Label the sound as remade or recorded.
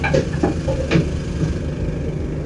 recorded